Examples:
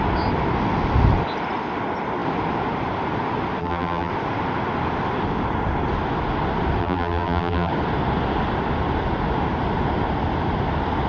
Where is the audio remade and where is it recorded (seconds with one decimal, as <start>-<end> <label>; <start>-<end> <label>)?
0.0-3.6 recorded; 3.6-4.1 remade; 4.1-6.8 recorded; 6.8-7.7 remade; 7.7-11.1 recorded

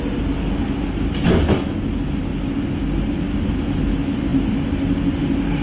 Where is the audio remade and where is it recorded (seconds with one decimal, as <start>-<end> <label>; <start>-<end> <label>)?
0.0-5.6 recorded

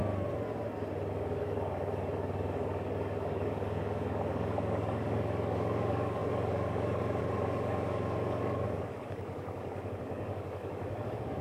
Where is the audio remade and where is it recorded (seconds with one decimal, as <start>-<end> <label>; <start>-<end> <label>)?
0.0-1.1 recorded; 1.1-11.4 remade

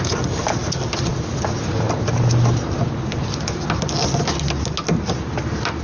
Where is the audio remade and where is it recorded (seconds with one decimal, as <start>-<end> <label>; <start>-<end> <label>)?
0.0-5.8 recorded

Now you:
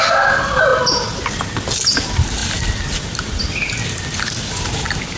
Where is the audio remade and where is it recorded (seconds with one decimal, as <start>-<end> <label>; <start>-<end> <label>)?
0.0-5.2 recorded

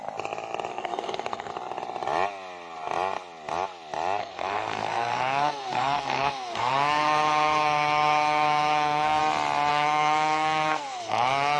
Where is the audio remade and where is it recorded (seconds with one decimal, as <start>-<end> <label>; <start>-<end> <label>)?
0.0-0.7 recorded; 0.7-1.5 remade; 1.5-4.2 recorded; 4.2-9.2 remade; 9.2-9.7 recorded; 9.7-11.6 remade

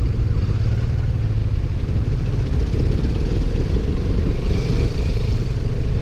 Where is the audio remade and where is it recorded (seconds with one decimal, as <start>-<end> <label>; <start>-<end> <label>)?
0.0-6.0 recorded

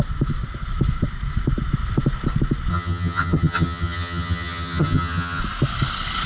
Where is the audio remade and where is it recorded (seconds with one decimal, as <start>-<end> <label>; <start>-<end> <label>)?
0.0-2.7 recorded; 2.7-5.4 remade; 5.4-6.3 recorded